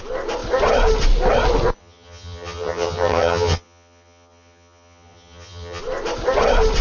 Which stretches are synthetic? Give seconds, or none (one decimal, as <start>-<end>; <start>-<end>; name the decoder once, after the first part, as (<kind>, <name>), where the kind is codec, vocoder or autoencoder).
1.8-5.8 (vocoder, HiFi-GAN)